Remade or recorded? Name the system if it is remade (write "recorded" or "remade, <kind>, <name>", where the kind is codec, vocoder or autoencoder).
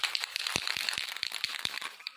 remade, vocoder, BigVGAN v2